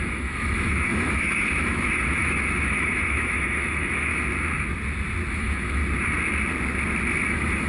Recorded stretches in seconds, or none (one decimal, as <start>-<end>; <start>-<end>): 4.1-5.3; 5.8-7.3